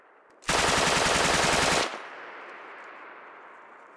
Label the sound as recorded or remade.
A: recorded